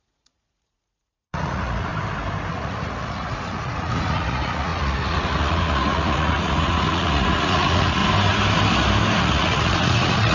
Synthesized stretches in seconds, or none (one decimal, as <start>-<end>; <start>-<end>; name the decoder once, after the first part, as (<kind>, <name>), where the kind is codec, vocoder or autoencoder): 0.0-1.9 (vocoder, Vocos); 2.5-8.0; 9.2-10.3